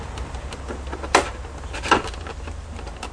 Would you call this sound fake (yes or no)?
no